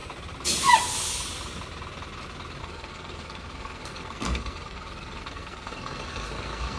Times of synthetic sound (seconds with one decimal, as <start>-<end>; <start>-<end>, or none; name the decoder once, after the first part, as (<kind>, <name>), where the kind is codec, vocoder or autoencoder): 2.6-6.8 (codec, SNAC)